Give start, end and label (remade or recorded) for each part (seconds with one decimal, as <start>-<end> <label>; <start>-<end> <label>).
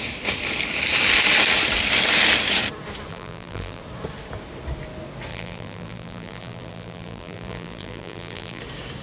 0.0-3.1 recorded; 3.1-3.8 remade; 3.8-5.3 recorded; 5.3-8.6 remade; 8.6-9.0 recorded